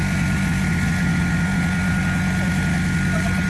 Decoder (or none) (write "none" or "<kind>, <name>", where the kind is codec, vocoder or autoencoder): none